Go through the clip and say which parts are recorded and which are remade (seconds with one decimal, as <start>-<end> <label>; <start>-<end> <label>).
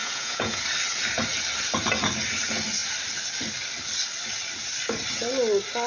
0.0-0.6 remade; 0.6-5.9 recorded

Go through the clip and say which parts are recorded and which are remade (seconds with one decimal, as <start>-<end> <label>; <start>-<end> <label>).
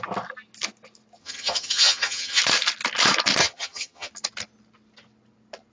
0.0-1.2 recorded; 1.2-2.4 remade; 2.4-3.4 recorded; 3.4-4.1 remade; 4.1-5.7 recorded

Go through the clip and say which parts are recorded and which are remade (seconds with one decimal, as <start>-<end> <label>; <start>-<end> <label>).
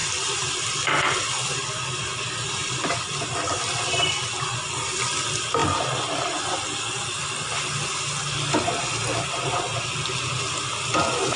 0.0-1.1 remade; 1.1-11.4 recorded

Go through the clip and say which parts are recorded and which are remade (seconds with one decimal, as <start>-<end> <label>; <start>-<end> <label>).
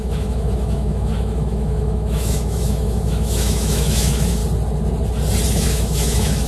0.0-4.4 remade; 4.4-5.5 recorded; 5.5-6.5 remade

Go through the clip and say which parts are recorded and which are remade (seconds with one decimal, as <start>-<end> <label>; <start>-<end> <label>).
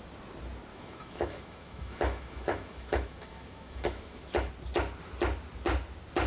0.0-0.7 recorded; 0.7-4.5 remade; 4.5-6.3 recorded